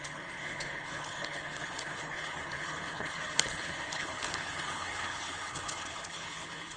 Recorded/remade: remade